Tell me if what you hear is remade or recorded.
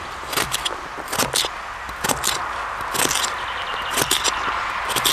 recorded